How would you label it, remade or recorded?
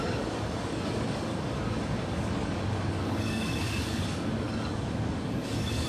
remade